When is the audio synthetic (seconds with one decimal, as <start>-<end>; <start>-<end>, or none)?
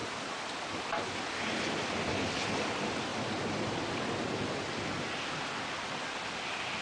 0.0-0.9; 3.1-4.6